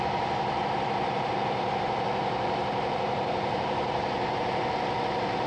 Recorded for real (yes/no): no